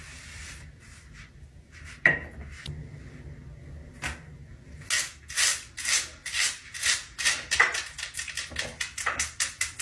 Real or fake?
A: real